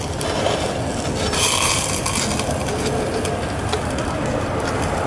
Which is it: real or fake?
real